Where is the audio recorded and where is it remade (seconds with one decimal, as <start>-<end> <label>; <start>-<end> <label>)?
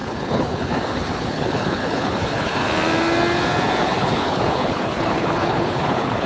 0.0-2.6 remade; 2.6-3.8 recorded; 3.8-6.3 remade